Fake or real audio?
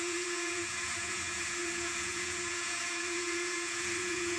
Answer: fake